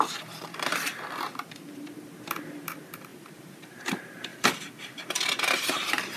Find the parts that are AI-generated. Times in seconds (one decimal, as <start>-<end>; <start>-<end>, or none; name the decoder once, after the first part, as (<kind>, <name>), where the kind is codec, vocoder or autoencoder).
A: 0.0-6.2 (vocoder, BigVGAN v2)